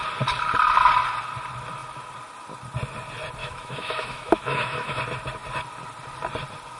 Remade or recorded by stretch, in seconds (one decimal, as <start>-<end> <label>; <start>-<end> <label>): 0.0-3.4 recorded; 3.4-5.0 remade; 5.0-6.8 recorded